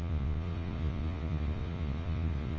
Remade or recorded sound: remade